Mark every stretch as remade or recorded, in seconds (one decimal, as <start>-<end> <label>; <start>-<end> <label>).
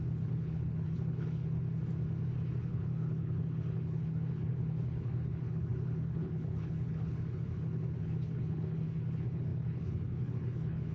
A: 0.0-1.6 remade; 1.6-2.6 recorded; 2.6-10.9 remade